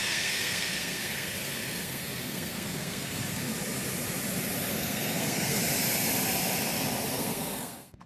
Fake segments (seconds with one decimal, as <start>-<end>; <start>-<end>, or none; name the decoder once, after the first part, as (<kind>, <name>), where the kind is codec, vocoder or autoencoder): 0.0-3.5 (codec, SNAC); 4.7-5.6; 7.1-8.1